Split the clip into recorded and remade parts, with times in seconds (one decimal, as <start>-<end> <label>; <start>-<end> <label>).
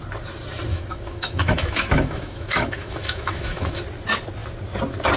0.0-0.7 recorded; 0.7-3.8 remade; 3.8-5.2 recorded